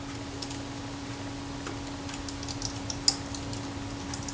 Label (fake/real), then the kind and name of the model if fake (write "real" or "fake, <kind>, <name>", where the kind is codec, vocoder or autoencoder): real